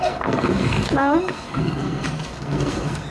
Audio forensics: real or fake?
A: fake